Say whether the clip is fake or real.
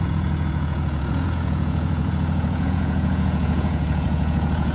fake